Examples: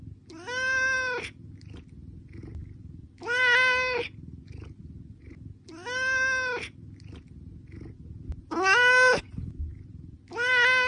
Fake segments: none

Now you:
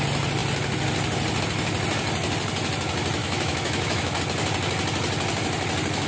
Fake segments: 3.2-4.2 (autoencoder, DAC-VAE)

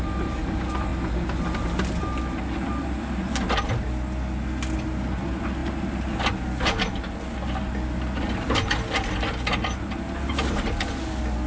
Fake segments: none

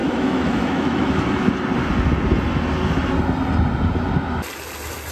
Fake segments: 0.0-1.5 (autoencoder, DAC-VAE)

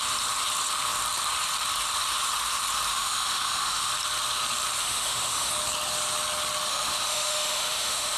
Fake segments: 2.9-3.9 (autoencoder, DAC-VAE); 4.8-5.5; 6.7-8.2

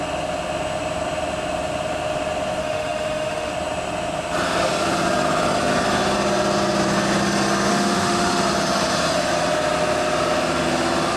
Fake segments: 2.6-3.5 (autoencoder, DAC-VAE); 7.7-8.4